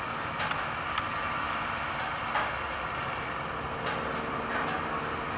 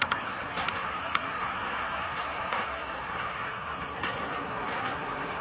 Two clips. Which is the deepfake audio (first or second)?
second